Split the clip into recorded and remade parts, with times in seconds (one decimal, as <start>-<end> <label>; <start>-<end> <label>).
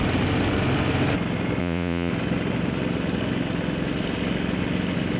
0.0-1.6 recorded; 1.6-2.1 remade; 2.1-5.2 recorded